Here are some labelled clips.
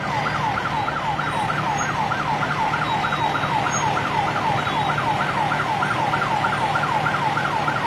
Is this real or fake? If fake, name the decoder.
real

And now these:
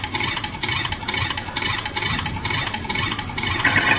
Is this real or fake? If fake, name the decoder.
fake, vocoder, BigVGAN v2